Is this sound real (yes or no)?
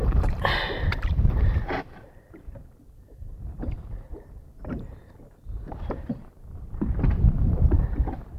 no